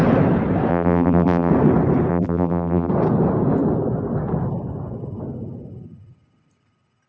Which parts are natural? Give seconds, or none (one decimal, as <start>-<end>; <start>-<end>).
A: 0.0-0.7; 1.5-2.1; 2.9-7.1